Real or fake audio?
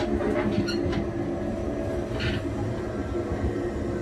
real